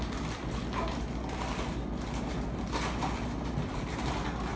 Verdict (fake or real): real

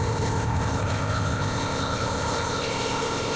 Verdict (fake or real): fake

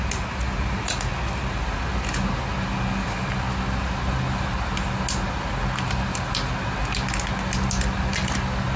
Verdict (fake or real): real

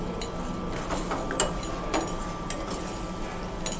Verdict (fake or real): real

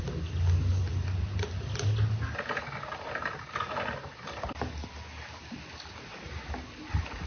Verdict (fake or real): real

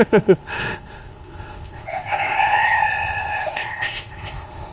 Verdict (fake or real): fake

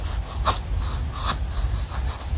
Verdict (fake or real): real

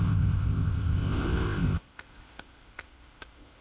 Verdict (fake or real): fake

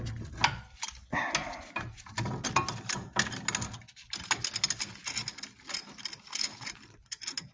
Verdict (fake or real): real